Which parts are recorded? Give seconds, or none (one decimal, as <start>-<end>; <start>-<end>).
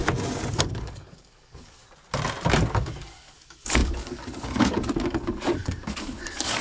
0.0-0.5; 1.8-2.7